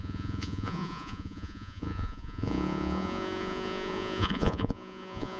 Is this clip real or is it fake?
fake